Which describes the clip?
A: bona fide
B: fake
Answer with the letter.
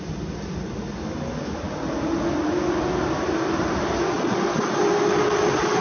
A